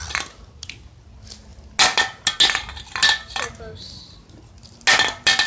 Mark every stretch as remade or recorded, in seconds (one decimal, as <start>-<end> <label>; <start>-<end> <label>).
0.0-5.5 recorded